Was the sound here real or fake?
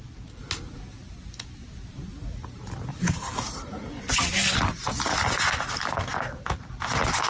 real